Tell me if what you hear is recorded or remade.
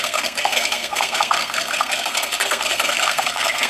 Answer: remade